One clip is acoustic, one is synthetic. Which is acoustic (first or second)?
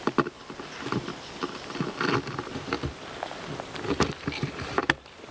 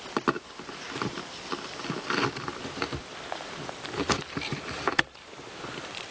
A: first